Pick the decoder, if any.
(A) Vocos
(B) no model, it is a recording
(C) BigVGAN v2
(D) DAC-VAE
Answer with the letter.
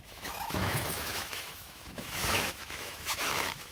D